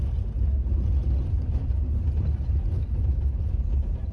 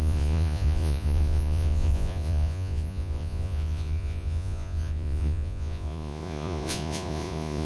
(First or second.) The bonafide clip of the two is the first